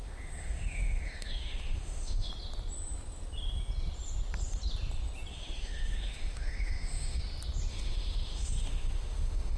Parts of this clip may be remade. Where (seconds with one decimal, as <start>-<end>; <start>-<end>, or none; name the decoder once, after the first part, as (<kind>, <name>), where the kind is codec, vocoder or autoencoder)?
0.0-2.3 (autoencoder, DAC-VAE); 5.3-7.2; 7.7-9.6